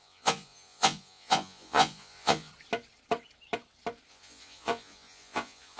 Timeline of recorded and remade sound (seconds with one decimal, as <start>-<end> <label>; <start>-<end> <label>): 0.0-2.5 remade; 2.5-4.1 recorded; 4.1-5.8 remade